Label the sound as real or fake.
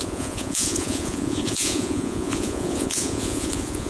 fake